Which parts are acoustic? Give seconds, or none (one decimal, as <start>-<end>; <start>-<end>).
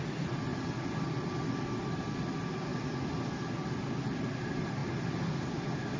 0.0-6.0